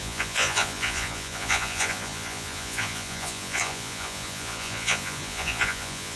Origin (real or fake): fake